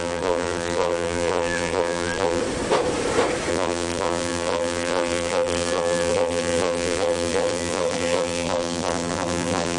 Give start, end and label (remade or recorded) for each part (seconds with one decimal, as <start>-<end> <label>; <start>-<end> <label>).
0.0-2.4 remade; 2.4-3.5 recorded; 3.5-9.8 remade